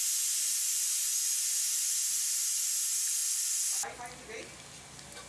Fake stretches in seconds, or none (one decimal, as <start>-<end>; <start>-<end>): none